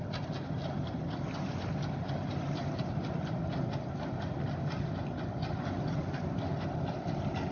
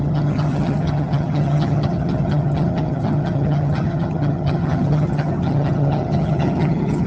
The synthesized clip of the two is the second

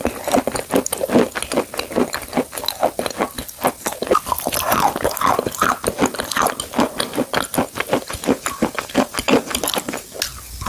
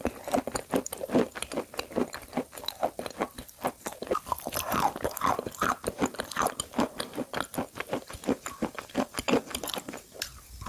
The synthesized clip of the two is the second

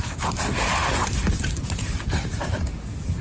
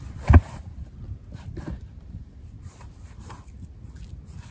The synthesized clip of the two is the second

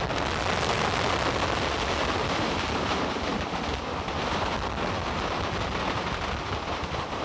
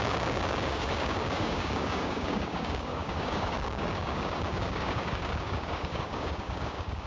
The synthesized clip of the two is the second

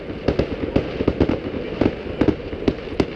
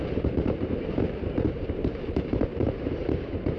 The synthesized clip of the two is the second